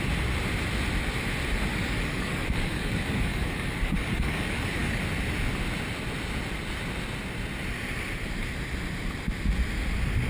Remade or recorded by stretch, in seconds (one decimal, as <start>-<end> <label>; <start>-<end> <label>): 0.0-1.7 recorded; 1.7-5.0 remade; 5.0-10.3 recorded